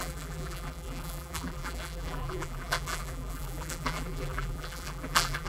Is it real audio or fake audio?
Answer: fake